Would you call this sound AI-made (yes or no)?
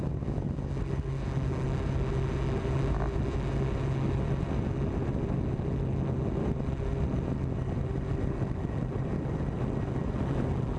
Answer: no